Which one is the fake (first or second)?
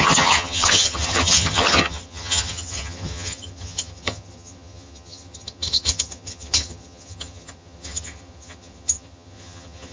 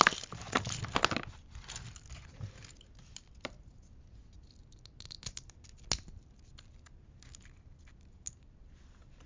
first